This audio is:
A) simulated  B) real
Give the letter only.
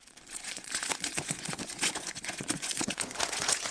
A